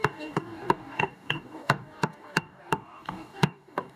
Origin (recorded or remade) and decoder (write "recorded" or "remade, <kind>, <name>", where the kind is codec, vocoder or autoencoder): remade, codec, DAC